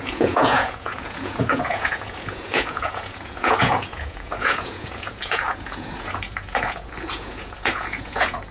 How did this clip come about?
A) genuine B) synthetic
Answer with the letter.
B